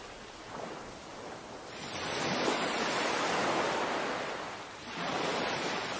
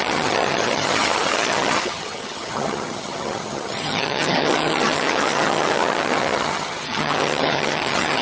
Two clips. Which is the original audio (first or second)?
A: first